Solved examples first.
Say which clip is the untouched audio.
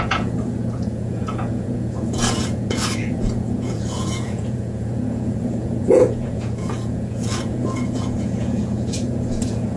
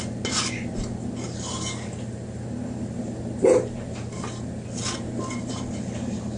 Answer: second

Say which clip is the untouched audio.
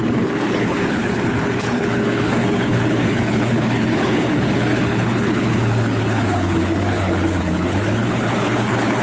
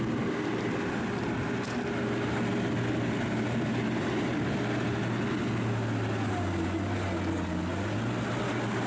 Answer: second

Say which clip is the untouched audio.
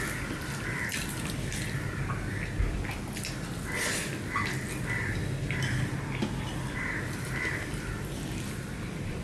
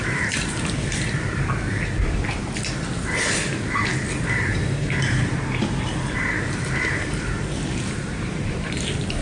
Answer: first